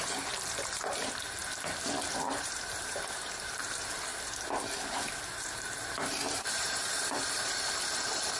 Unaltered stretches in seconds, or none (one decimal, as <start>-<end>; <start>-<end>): 1.4-2.0